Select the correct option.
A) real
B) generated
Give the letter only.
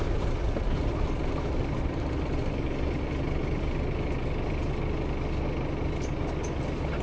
A